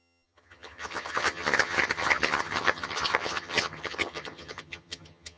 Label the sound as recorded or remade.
remade